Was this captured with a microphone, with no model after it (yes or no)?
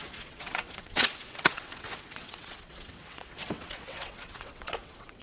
no